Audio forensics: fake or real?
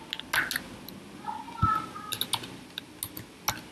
real